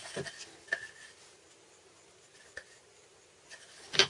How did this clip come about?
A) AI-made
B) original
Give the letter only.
B